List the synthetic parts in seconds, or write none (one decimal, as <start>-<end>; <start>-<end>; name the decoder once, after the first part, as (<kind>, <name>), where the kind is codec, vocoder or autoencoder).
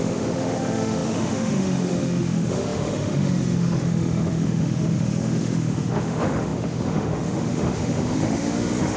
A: 0.0-9.0 (autoencoder, DAC-VAE)